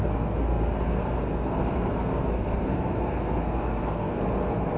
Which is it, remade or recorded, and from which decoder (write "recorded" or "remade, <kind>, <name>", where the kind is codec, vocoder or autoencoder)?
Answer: remade, codec, SNAC